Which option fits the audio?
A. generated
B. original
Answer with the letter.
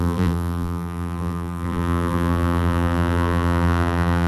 A